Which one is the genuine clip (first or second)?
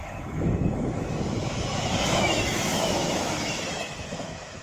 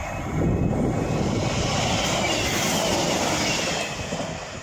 second